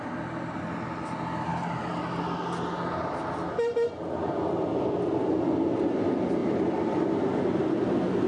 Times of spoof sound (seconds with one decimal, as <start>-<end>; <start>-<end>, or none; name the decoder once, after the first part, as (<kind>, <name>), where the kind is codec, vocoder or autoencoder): none